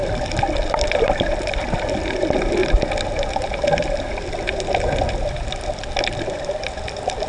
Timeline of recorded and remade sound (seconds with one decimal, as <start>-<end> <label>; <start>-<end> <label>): 0.0-2.6 remade; 2.6-5.9 recorded; 5.9-7.3 remade

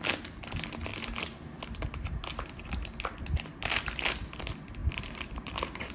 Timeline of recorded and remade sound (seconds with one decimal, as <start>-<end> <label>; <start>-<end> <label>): 0.0-4.8 recorded; 4.8-5.9 remade

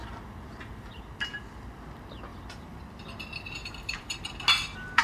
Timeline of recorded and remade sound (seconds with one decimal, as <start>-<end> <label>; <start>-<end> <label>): 0.0-1.0 remade; 1.0-2.3 recorded; 2.3-2.8 remade; 2.8-3.6 recorded; 3.6-4.3 remade; 4.3-5.0 recorded

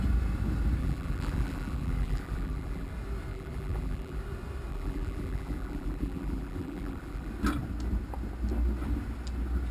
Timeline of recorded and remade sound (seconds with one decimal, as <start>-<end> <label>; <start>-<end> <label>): 0.0-0.8 recorded; 0.8-2.9 remade; 2.9-3.3 recorded; 3.3-4.2 remade; 4.2-4.7 recorded; 4.7-7.3 remade; 7.3-9.7 recorded

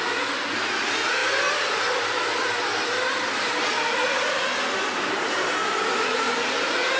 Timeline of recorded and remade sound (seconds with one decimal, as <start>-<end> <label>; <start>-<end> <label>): 0.0-7.0 recorded

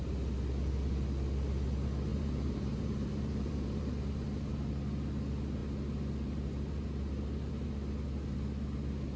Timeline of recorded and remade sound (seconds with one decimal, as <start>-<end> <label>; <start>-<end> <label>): 0.0-2.1 recorded; 2.1-4.7 remade; 4.7-9.2 recorded